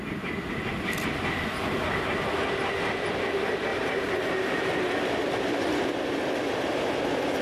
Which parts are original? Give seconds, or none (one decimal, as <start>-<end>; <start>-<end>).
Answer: 0.0-3.7; 4.9-7.4